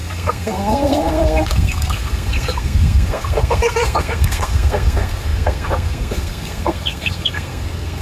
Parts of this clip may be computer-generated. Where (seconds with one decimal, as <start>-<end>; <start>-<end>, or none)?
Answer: 0.0-8.0